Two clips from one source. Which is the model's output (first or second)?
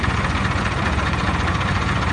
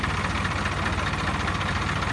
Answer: first